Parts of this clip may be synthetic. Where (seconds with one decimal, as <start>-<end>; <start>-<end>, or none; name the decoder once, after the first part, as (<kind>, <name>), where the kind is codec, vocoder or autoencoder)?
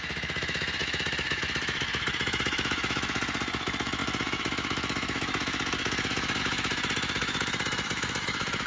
0.0-8.7 (autoencoder, DAC-VAE)